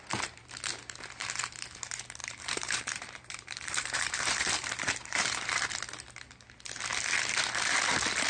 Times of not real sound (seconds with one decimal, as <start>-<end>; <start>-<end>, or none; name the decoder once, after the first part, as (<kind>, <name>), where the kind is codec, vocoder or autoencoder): 2.2-5.6 (vocoder, BigVGAN v2)